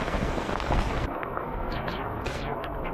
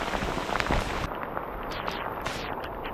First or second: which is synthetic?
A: first